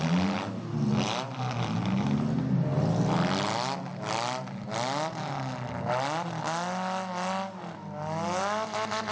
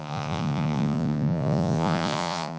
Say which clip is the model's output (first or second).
second